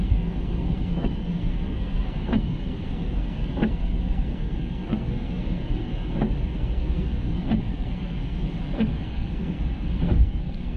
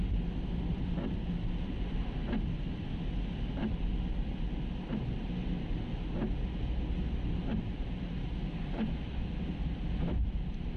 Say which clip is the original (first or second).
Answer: second